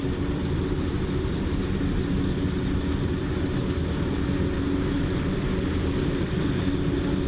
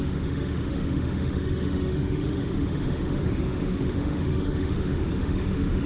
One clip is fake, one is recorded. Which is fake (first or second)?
second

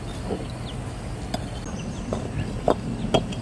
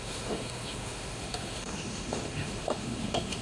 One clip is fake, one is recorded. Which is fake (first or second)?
second